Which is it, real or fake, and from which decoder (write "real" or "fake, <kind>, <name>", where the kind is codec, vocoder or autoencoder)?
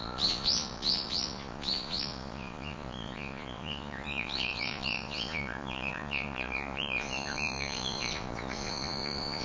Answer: fake, vocoder, Vocos